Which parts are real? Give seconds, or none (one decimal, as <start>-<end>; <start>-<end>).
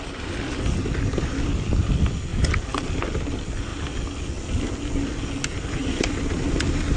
0.0-2.3; 3.0-5.5; 6.2-7.0